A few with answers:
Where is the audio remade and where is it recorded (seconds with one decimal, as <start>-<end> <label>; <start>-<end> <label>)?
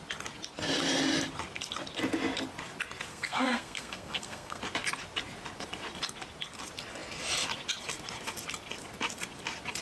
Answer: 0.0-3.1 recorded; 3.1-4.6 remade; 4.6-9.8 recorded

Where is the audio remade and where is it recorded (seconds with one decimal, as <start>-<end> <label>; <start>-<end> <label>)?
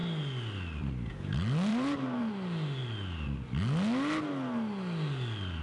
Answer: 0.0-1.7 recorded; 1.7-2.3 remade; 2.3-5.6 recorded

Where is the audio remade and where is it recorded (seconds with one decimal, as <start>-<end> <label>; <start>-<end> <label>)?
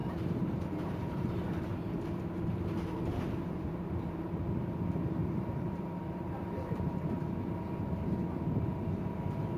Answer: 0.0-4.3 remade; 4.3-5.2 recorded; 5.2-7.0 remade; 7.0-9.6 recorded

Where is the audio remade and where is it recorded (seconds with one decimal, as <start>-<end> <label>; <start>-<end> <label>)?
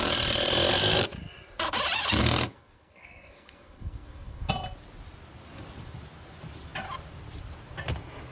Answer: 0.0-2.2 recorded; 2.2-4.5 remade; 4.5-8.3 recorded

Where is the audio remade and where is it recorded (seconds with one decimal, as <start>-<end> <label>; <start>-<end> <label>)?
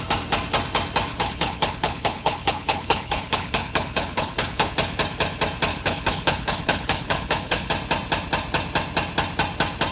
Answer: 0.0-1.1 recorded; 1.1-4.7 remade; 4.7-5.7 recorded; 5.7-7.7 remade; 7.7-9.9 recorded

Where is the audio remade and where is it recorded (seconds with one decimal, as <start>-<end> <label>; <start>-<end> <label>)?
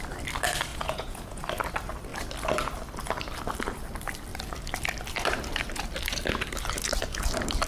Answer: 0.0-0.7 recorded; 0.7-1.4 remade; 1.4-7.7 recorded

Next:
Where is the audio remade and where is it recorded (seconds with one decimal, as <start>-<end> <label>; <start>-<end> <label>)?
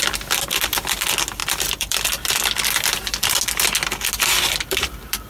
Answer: 0.0-1.4 recorded; 1.4-3.3 remade; 3.3-4.3 recorded; 4.3-5.3 remade